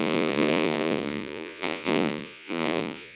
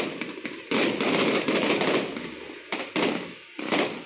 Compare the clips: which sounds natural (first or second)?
second